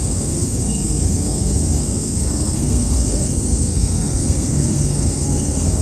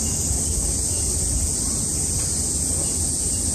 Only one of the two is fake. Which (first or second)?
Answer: first